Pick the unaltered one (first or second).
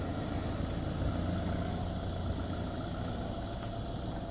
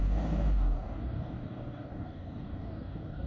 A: first